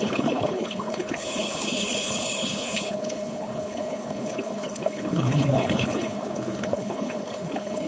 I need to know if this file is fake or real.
fake